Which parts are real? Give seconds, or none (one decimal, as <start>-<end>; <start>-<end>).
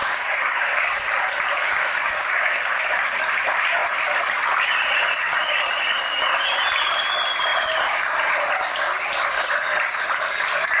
1.0-1.6; 2.8-10.8